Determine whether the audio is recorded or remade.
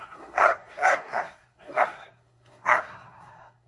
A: remade